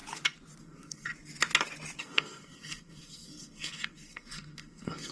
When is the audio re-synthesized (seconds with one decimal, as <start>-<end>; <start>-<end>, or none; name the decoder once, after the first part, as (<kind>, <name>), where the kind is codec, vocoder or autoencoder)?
0.6-1.1 (codec, SNAC); 2.0-5.1